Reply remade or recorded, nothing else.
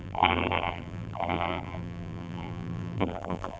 remade